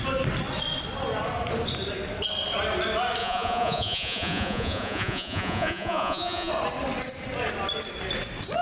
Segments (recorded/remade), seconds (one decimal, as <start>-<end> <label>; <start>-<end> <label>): 0.0-3.2 recorded; 3.2-6.5 remade; 6.5-8.6 recorded